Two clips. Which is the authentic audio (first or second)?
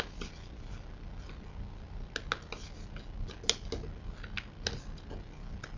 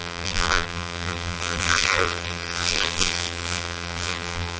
first